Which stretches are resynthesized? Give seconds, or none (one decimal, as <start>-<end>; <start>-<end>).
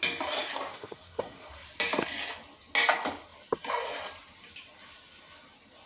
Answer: 0.7-1.5